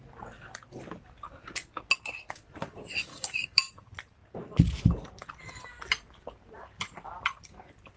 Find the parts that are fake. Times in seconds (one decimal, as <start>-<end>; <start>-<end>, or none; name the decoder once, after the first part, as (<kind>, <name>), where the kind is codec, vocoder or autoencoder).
3.1-3.7 (codec, DAC)